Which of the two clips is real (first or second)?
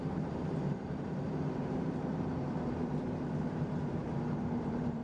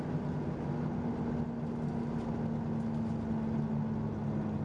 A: second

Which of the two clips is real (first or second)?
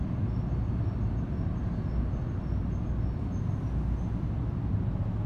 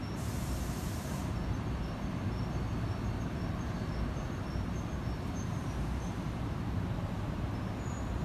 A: first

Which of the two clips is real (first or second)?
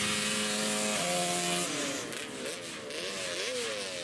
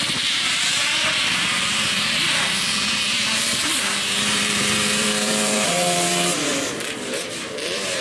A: first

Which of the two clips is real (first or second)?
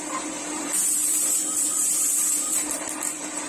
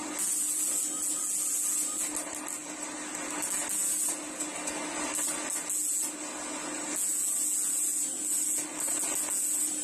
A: second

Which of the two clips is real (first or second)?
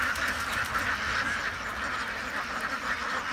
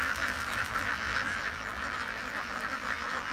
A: first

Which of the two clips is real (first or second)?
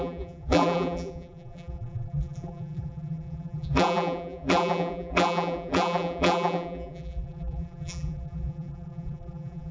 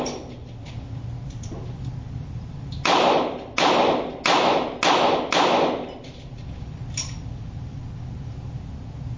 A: second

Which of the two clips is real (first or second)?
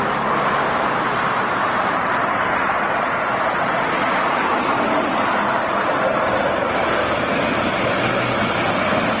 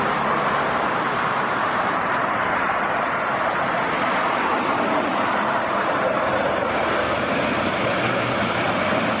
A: first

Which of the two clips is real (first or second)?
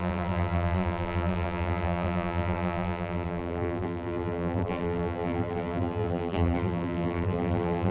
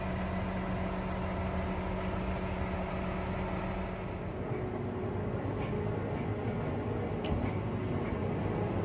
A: second